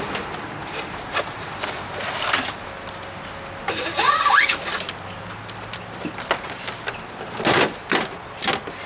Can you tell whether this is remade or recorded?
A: recorded